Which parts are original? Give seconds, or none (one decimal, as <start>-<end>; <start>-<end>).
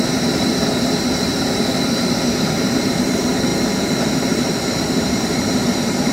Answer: 3.5-4.0